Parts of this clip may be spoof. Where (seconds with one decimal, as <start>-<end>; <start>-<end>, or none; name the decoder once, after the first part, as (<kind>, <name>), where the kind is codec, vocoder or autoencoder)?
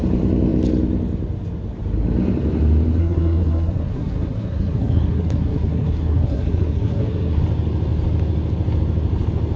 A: 3.0-7.4 (codec, SNAC)